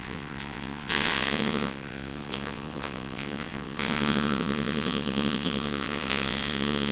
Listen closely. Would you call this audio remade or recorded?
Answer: remade